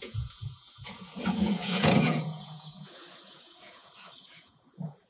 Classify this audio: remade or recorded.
remade